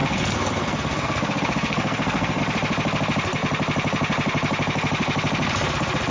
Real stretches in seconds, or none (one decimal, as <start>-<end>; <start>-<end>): 2.4-6.1